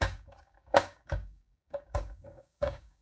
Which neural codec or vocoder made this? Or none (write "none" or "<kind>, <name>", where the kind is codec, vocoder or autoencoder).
codec, DAC